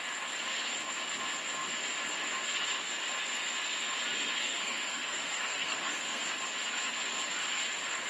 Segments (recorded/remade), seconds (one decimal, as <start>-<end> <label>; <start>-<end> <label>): 0.0-4.4 recorded; 4.4-6.2 remade; 6.2-8.1 recorded